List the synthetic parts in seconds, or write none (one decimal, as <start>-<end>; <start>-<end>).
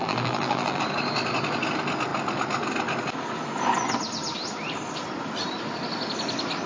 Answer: 0.0-0.8